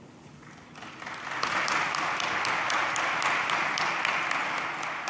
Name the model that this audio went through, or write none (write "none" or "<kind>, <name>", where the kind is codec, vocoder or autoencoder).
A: none